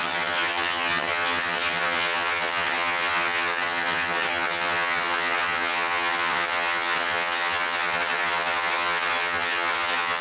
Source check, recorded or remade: remade